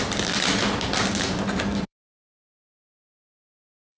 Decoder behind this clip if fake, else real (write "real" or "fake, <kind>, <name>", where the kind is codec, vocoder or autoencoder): fake, vocoder, BigVGAN v2